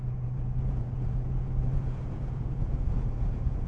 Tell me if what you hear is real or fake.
fake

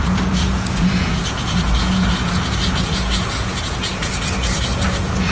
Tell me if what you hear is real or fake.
fake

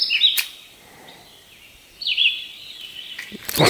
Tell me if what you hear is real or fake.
fake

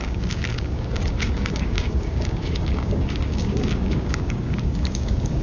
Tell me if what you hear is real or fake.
fake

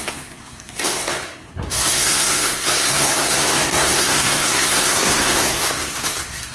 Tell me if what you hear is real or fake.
fake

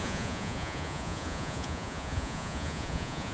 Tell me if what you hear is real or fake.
fake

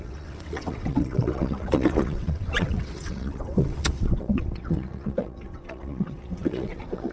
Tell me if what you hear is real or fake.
fake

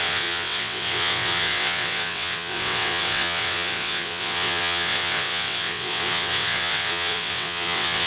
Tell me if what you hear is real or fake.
fake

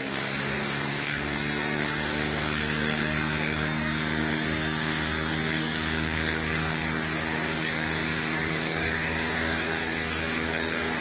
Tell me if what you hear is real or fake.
fake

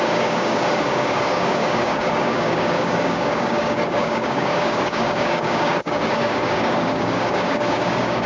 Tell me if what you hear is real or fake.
fake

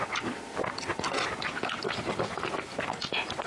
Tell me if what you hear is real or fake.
real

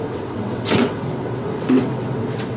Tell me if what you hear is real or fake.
fake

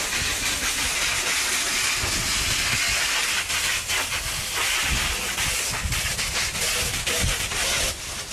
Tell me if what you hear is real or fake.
real